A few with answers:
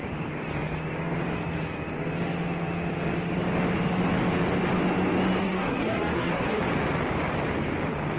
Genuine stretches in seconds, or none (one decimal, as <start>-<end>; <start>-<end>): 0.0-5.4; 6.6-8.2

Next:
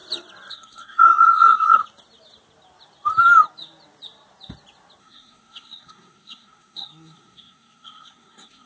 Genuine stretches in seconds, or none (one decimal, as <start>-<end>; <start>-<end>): 0.0-0.5; 1.8-5.0

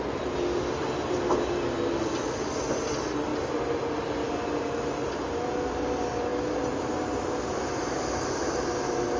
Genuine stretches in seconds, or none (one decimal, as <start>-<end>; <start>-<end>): 0.0-9.2

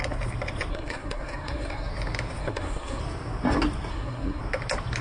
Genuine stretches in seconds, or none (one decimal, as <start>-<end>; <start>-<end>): 0.0-0.7; 1.9-2.4; 3.0-3.9; 4.4-5.0